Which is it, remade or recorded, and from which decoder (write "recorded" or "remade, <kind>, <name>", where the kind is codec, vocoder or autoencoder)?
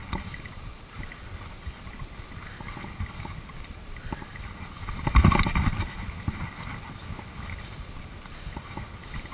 recorded